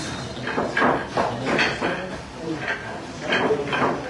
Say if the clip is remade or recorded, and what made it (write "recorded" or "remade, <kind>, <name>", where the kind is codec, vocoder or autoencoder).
recorded